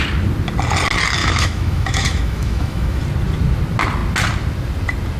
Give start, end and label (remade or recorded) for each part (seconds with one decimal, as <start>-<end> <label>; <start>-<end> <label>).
0.0-1.2 recorded; 1.2-3.0 remade; 3.0-5.2 recorded